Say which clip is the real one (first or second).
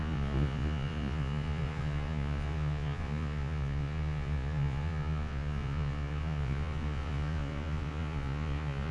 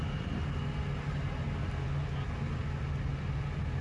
second